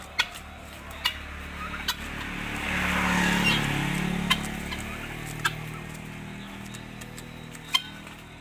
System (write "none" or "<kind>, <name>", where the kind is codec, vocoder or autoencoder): none